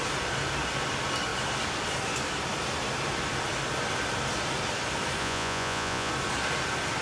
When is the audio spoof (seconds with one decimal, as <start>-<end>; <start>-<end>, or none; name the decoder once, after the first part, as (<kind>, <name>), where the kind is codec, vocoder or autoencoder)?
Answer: 5.2-6.1 (vocoder, Vocos)